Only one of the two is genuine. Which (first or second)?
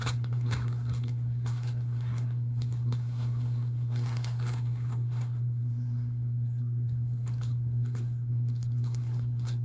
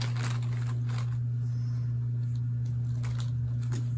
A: second